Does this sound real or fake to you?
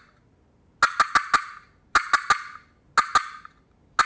real